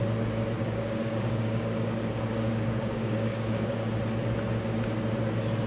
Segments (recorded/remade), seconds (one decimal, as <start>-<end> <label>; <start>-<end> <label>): 0.0-0.6 recorded; 0.6-4.0 remade; 4.0-5.7 recorded